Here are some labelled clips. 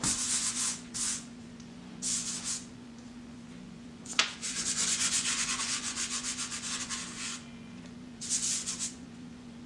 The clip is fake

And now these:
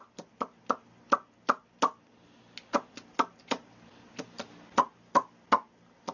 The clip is real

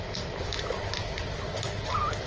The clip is real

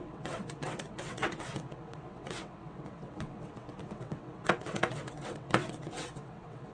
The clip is fake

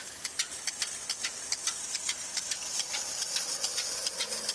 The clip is real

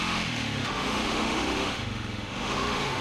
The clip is fake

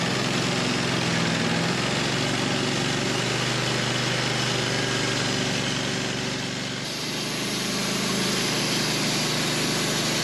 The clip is real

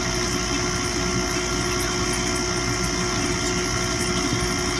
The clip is real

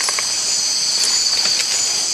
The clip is real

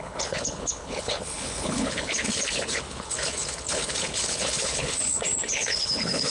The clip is fake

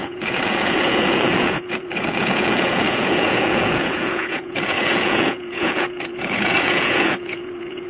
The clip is fake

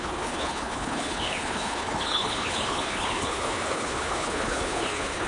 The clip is fake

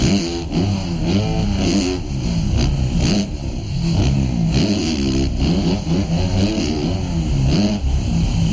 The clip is real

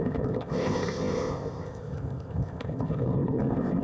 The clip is fake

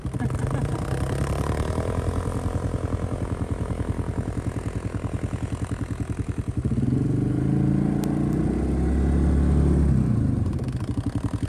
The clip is real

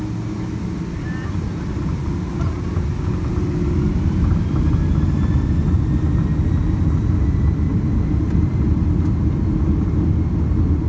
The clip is real